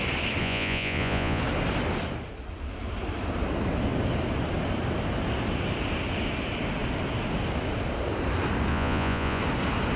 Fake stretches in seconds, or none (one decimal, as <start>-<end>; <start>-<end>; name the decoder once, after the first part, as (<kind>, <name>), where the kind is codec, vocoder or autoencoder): 0.4-1.4 (vocoder, Vocos); 8.7-9.4